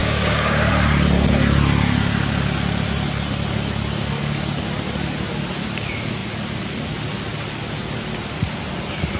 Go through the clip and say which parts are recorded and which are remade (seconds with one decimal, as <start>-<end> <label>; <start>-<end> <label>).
0.0-0.7 remade; 0.7-9.2 recorded